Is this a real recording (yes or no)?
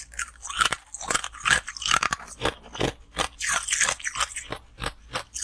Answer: yes